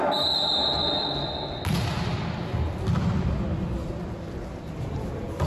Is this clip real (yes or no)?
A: yes